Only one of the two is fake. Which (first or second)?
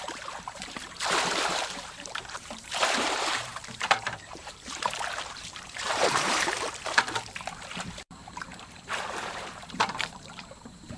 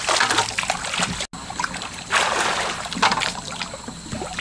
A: first